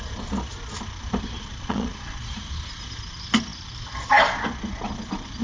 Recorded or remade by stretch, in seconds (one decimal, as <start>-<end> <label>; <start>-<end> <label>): 0.0-1.5 recorded; 1.5-2.3 remade; 2.3-5.4 recorded